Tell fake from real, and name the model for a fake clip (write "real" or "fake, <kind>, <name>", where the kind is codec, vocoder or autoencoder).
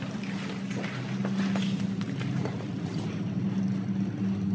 real